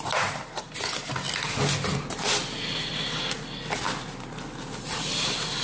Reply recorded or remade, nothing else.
recorded